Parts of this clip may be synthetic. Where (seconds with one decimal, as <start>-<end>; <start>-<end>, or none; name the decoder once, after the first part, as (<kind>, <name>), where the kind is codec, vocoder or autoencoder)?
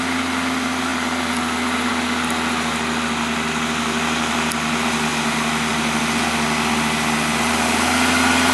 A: none